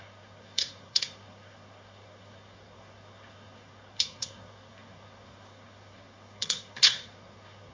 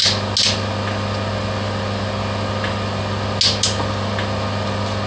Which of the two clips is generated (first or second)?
first